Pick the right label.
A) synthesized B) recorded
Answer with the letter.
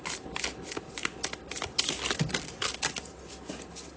B